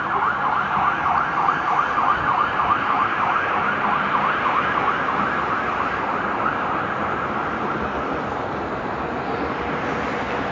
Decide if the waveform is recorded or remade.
recorded